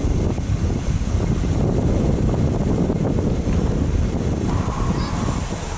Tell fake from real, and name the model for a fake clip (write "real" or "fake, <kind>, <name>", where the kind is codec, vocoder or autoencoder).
real